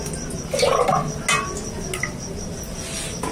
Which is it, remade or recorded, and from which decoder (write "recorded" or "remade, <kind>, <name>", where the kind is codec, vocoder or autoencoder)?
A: recorded